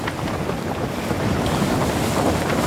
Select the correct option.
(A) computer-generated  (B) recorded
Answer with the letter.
B